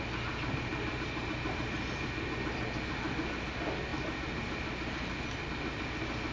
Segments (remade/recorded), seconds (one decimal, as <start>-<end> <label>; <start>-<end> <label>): 0.0-6.3 recorded